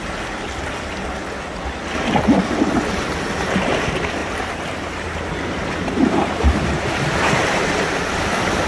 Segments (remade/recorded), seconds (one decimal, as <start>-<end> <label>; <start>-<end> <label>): 0.0-4.2 recorded; 4.2-7.6 remade; 7.6-8.7 recorded